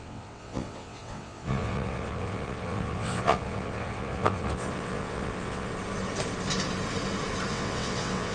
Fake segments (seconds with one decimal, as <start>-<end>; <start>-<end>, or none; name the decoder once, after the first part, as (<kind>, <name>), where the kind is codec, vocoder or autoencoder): 0.0-5.7 (vocoder, WaveNeXt); 7.5-8.3